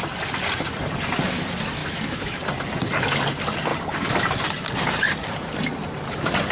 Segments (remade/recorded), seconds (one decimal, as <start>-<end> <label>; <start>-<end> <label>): 0.0-1.8 recorded; 1.8-2.4 remade; 2.4-6.5 recorded